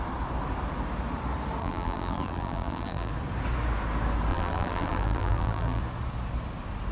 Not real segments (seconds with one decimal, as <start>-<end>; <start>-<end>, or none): 1.6-3.1; 4.3-5.8